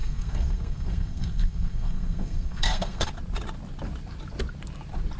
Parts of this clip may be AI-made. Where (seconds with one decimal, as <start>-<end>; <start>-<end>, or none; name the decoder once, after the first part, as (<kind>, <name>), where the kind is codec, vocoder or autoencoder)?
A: 0.0-3.1 (codec, SNAC)